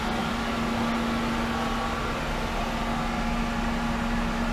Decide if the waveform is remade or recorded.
recorded